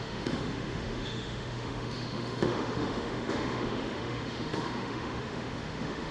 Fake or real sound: fake